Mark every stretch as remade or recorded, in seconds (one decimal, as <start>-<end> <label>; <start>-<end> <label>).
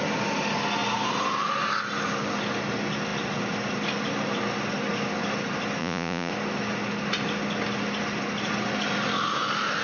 0.0-5.8 recorded; 5.8-6.3 remade; 6.3-9.8 recorded